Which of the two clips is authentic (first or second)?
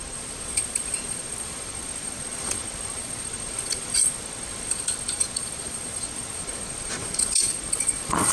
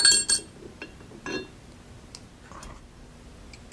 second